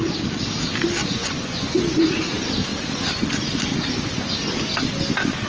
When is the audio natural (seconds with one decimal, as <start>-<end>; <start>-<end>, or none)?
0.0-1.0; 1.7-5.5